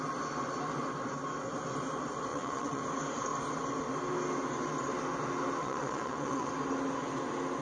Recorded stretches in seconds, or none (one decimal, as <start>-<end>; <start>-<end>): 0.0-2.3; 2.8-5.6; 6.5-7.6